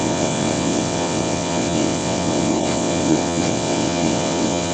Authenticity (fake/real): fake